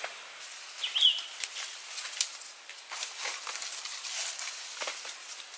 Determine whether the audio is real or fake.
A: real